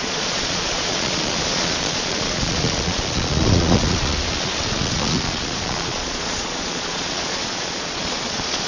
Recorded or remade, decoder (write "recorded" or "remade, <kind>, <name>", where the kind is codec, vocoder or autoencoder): remade, vocoder, Vocos